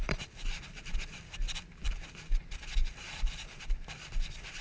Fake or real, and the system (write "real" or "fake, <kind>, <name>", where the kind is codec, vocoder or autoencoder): fake, vocoder, BigVGAN v2